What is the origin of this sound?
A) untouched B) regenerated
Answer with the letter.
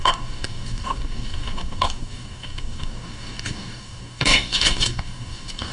B